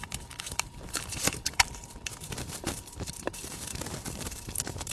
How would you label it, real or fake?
fake